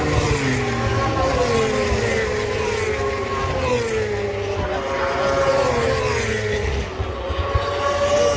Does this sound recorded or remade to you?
recorded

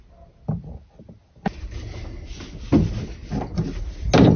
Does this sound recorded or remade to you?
recorded